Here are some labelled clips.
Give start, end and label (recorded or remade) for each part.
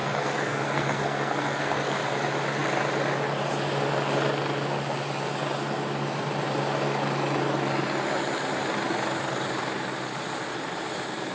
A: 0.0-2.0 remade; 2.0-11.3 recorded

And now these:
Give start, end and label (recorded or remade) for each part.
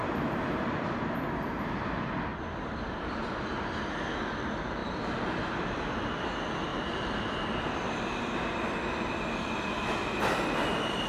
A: 0.0-6.7 recorded; 6.7-7.6 remade; 7.6-11.1 recorded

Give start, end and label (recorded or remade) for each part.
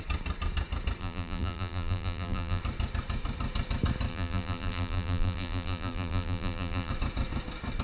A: 0.0-1.0 recorded; 1.0-2.6 remade; 2.6-4.1 recorded; 4.1-6.9 remade; 6.9-7.8 recorded